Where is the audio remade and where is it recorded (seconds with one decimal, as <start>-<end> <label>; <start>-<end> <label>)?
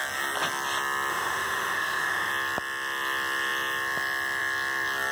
0.0-1.1 recorded; 1.1-2.3 remade; 2.3-5.1 recorded